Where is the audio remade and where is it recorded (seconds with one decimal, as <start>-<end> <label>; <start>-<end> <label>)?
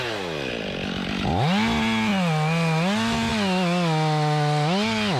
0.0-5.2 recorded